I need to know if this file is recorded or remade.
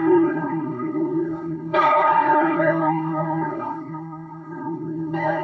remade